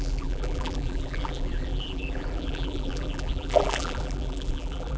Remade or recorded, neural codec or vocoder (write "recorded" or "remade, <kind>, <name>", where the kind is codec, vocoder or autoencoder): remade, vocoder, BigVGAN v2